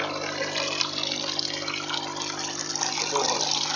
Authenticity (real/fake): real